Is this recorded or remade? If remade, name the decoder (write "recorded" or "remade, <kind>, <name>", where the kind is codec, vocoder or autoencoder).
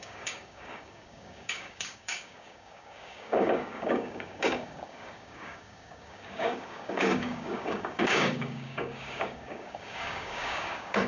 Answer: remade, codec, DAC